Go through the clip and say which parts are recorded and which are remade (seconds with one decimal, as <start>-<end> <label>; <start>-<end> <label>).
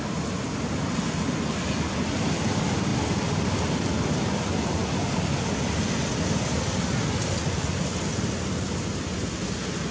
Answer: 0.0-9.9 recorded